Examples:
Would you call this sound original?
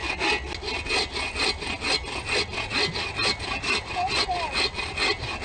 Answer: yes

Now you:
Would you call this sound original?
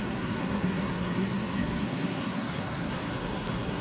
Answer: no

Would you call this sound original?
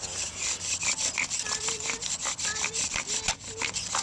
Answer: yes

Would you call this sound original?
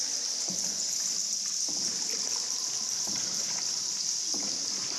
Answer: yes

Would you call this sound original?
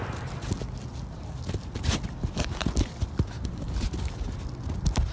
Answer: yes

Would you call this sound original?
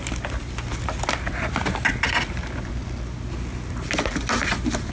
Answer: yes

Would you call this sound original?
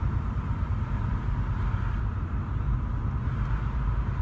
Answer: yes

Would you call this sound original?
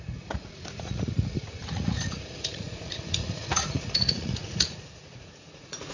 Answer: no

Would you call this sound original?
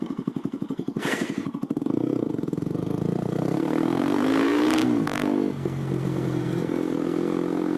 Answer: no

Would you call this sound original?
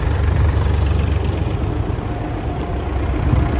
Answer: yes